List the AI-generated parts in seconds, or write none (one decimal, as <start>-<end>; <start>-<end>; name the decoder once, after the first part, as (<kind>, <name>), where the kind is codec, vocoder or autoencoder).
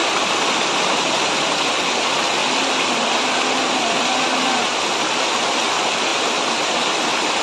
6.1-6.7 (vocoder, BigVGAN v2)